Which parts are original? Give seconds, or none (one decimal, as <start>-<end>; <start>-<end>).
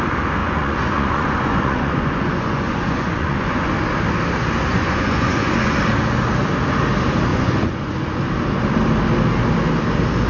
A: 0.0-0.4; 3.7-4.7; 5.8-7.3; 7.9-10.3